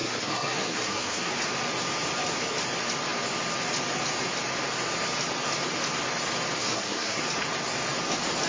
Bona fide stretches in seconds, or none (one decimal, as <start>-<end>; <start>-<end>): 1.3-6.6; 7.2-8.5